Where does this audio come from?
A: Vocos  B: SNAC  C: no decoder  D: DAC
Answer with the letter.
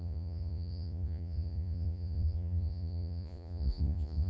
A